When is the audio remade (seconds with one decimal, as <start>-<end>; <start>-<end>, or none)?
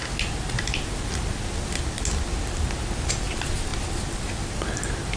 none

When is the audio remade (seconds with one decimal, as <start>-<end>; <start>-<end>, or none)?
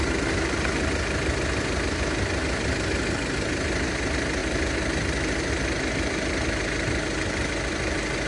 none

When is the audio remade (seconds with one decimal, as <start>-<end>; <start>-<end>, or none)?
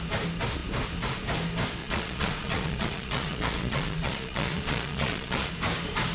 1.8-5.5